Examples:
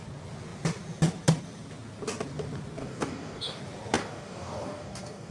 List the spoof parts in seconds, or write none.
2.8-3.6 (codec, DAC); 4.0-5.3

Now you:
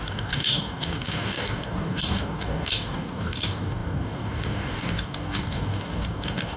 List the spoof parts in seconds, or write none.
0.0-6.6 (codec, DAC)

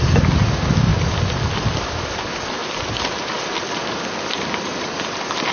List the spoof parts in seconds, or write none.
none

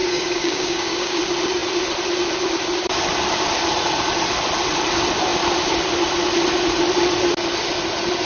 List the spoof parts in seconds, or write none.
0.0-1.2 (codec, DAC)

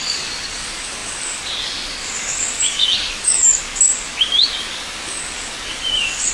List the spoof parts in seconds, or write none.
0.0-6.3 (codec, DAC)

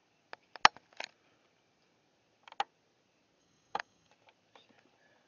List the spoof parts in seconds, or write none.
3.4-4.1 (codec, DAC)

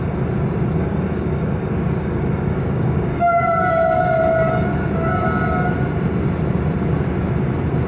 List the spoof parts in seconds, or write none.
0.8-4.2 (codec, DAC); 4.7-5.2

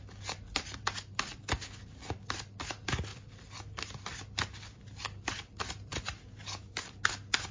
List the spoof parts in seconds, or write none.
none